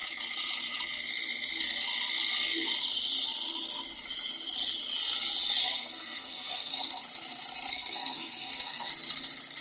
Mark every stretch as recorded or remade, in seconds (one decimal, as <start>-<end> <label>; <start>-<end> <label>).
0.0-5.6 recorded; 5.6-7.0 remade; 7.0-7.7 recorded; 7.7-8.9 remade; 8.9-9.6 recorded